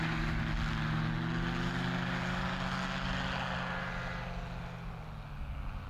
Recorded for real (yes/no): yes